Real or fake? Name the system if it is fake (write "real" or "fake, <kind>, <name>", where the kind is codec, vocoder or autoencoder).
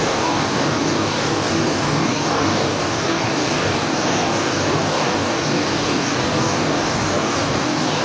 fake, codec, DAC